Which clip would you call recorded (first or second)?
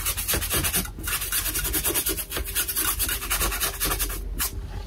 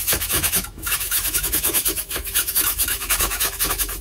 first